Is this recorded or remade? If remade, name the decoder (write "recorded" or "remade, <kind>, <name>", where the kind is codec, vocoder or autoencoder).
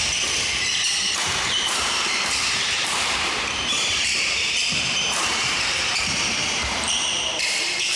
remade, vocoder, BigVGAN v2